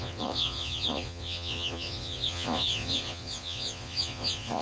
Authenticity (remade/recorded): remade